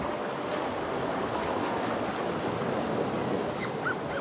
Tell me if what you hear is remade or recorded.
recorded